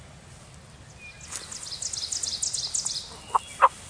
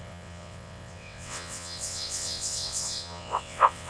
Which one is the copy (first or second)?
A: second